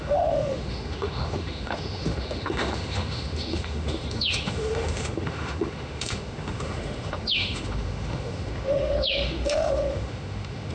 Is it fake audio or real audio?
fake